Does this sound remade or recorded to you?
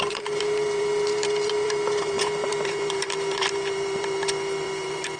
remade